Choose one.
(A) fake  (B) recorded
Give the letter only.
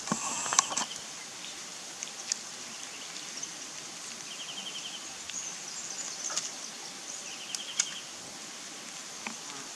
B